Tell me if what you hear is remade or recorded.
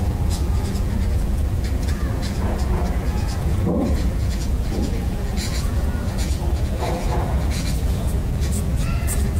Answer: remade